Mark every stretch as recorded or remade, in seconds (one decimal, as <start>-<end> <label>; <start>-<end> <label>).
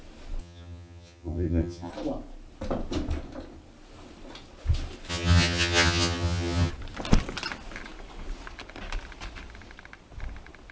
0.0-0.4 recorded; 0.4-1.9 remade; 1.9-5.1 recorded; 5.1-6.7 remade; 6.7-10.7 recorded